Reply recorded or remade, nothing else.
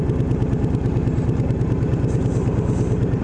recorded